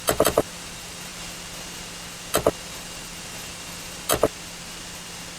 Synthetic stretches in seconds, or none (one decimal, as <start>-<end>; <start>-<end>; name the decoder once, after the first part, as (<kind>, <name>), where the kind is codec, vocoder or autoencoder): 0.0-1.1 (vocoder, BigVGAN v2); 2.6-4.1